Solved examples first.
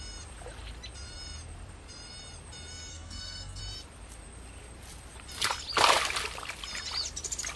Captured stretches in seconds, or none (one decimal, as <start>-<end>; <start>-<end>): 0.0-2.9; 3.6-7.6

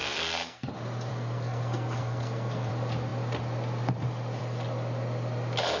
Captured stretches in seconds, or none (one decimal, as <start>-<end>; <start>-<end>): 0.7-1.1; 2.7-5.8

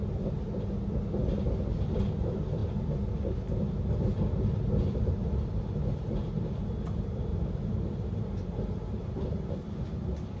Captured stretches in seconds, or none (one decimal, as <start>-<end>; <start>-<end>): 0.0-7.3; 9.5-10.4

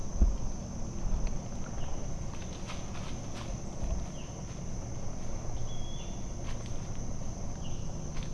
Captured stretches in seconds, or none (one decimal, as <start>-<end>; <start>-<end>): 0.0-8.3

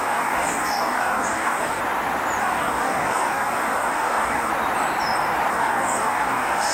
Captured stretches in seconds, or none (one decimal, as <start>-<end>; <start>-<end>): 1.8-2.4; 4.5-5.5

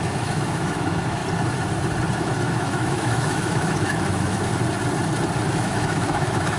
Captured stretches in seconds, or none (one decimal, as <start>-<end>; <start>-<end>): 1.2-2.2; 4.5-5.5